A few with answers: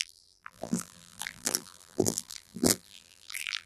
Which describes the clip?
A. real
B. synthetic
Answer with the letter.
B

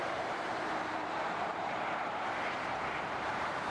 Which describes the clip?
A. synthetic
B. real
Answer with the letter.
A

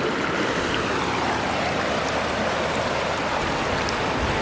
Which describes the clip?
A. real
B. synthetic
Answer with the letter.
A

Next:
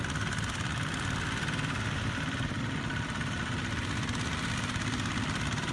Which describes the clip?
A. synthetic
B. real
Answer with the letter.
A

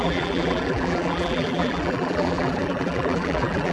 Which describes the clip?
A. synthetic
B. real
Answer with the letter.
A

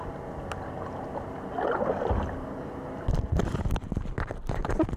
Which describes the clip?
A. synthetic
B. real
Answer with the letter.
B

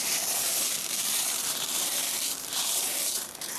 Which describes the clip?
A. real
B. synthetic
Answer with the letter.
B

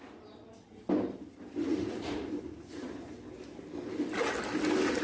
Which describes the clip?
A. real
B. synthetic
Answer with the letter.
A